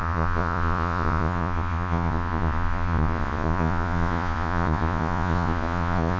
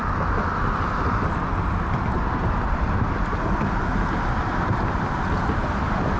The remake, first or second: first